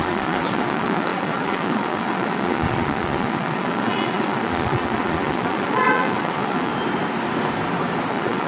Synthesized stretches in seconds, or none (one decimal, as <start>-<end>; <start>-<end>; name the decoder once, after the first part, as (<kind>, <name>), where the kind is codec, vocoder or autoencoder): 0.0-6.7 (vocoder, Vocos); 8.1-8.5